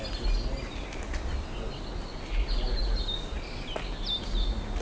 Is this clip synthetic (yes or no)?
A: no